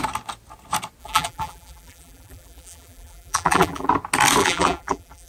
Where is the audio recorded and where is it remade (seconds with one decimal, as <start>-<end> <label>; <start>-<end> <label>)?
0.0-1.0 recorded; 1.0-3.9 remade; 3.9-4.4 recorded; 4.4-5.3 remade